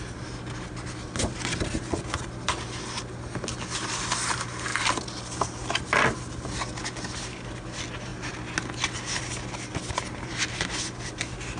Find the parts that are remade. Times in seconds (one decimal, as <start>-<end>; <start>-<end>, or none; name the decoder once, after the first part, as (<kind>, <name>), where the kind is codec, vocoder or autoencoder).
4.7-5.2 (vocoder, BigVGAN v2)

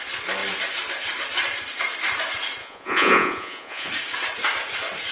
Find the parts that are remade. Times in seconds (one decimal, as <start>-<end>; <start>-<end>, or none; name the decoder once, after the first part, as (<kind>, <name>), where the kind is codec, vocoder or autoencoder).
2.6-3.9 (vocoder, Vocos)

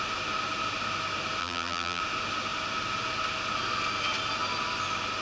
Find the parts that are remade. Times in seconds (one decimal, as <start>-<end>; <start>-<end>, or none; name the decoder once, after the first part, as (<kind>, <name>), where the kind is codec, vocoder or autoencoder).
1.4-2.0 (vocoder, BigVGAN v2)

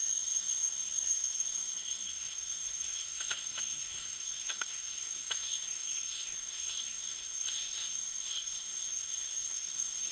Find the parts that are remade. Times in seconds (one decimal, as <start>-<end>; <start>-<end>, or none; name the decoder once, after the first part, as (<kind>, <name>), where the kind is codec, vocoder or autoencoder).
0.0-10.1 (codec, SNAC)

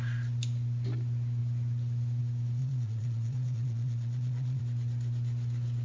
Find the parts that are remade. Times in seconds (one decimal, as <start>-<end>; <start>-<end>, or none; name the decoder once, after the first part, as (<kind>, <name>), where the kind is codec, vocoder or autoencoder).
2.6-4.6 (vocoder, Vocos)

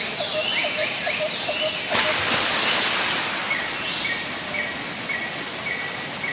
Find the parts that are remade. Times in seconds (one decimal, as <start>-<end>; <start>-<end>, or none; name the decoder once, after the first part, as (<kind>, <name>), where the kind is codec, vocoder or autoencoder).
0.6-1.4 (vocoder, BigVGAN v2)

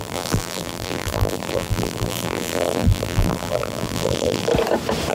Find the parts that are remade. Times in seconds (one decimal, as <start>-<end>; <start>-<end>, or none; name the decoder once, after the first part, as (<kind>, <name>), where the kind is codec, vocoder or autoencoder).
0.0-4.5 (vocoder, BigVGAN v2)

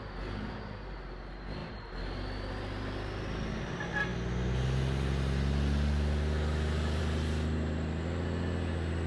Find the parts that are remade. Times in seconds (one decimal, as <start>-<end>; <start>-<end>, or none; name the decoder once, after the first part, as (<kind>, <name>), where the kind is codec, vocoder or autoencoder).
none